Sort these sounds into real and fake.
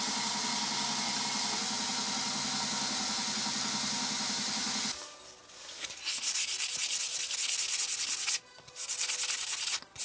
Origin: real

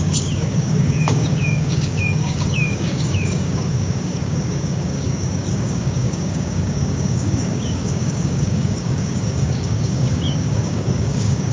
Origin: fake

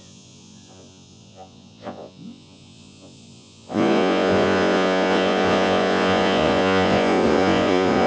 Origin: fake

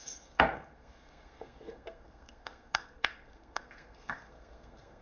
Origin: fake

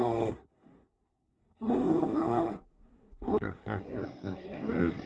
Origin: fake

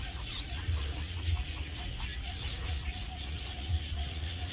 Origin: fake